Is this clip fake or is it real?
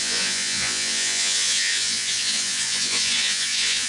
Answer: fake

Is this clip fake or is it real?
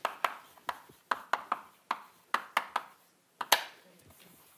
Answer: real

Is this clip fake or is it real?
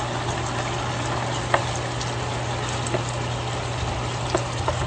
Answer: real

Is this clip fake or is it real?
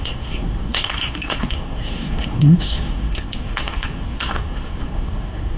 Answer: fake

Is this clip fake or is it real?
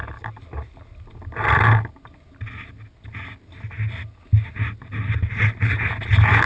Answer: real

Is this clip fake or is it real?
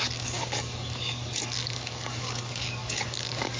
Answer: fake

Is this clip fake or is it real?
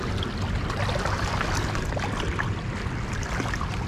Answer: real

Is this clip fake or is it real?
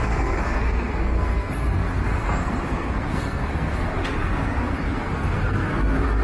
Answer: fake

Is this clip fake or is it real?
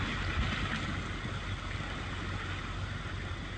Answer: real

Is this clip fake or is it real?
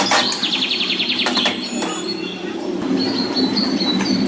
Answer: real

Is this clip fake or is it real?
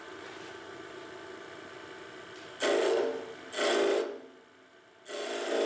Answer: real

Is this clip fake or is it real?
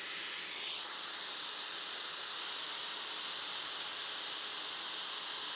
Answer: real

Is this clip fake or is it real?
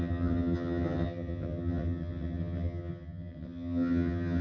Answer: fake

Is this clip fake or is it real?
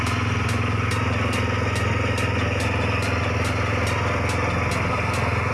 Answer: real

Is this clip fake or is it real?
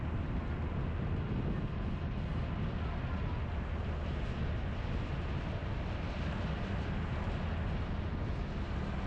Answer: real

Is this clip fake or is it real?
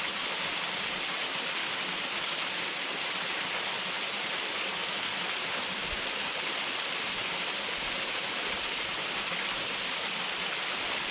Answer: real